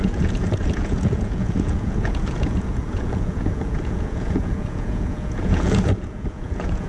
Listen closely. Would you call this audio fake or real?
fake